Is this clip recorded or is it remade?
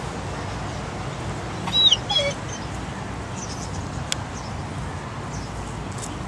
recorded